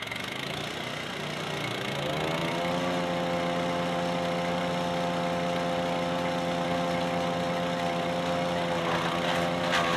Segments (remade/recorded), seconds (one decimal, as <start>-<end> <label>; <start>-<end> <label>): 0.0-10.0 recorded